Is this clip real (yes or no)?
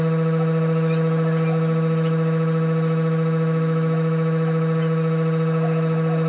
yes